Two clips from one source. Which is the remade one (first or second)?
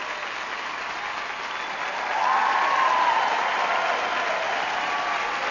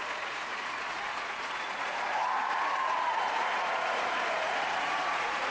second